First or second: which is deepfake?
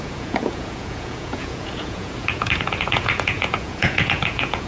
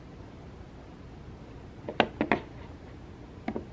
first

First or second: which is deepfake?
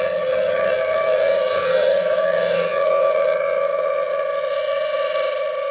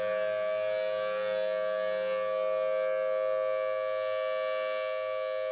first